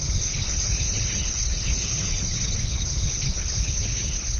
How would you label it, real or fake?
fake